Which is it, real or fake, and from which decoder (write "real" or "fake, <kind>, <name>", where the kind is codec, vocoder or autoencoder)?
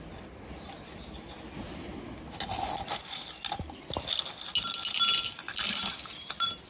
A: real